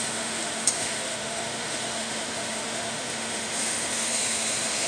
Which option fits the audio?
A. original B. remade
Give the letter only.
B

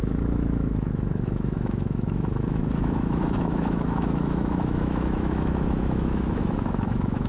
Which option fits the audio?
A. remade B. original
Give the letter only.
A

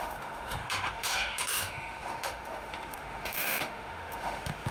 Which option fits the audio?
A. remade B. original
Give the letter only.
A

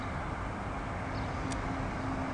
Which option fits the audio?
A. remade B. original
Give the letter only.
B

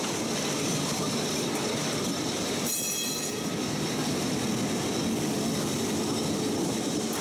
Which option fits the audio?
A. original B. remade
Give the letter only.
A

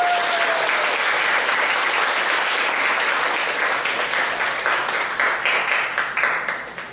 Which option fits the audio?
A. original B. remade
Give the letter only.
A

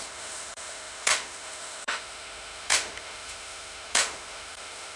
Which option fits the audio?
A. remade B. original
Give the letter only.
A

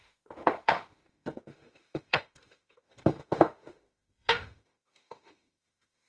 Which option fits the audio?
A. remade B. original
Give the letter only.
A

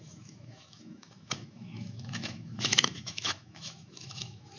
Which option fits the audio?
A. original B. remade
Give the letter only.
B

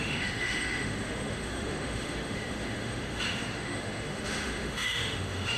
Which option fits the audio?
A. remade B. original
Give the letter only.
A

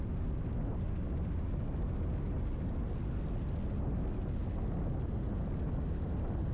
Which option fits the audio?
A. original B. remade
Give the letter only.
A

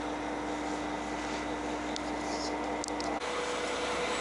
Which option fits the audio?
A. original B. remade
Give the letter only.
A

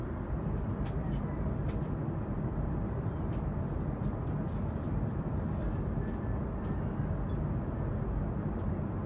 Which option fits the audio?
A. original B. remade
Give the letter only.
A